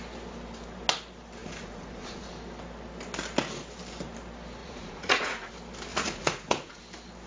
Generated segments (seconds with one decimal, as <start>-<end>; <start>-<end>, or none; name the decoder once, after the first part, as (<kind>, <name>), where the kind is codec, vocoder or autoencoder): 1.4-2.3 (vocoder, Vocos); 4.6-5.5; 5.9-6.8